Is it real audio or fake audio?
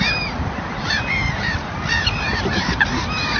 fake